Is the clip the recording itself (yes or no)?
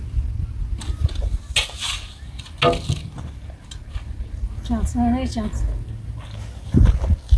yes